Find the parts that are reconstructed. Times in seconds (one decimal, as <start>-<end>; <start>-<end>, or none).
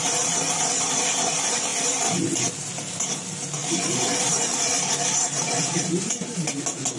3.6-6.6